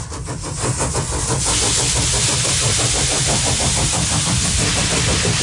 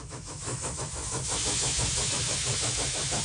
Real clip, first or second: first